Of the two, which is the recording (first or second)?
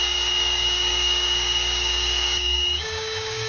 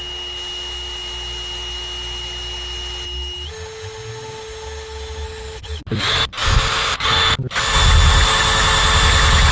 second